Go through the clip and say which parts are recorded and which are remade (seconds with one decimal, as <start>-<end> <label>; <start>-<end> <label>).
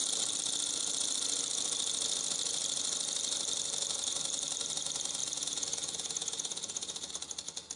0.0-5.2 recorded; 5.2-7.1 remade; 7.1-7.8 recorded